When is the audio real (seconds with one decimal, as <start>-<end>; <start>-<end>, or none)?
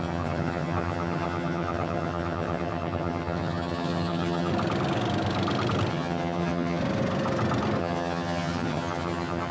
4.5-5.9; 6.8-7.8